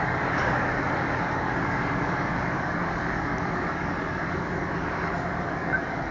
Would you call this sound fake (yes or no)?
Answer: yes